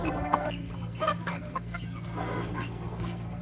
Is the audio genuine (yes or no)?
no